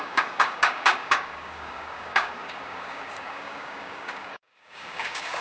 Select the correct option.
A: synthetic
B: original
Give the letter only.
A